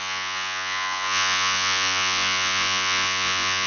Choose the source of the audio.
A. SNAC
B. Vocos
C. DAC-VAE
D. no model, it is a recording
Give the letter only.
B